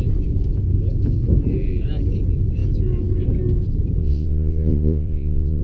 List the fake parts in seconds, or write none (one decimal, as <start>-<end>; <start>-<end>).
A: 4.0-5.6